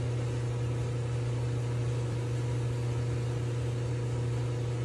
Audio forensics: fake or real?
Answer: real